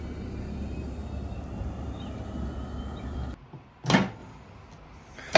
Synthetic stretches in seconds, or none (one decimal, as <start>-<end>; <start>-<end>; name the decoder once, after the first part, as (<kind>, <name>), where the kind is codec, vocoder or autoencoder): none